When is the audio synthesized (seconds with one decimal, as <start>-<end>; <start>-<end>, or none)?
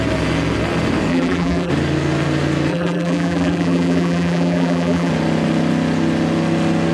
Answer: 1.1-1.7; 2.7-5.1